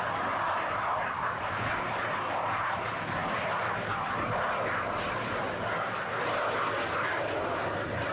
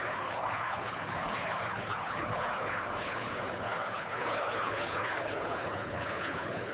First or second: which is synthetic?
second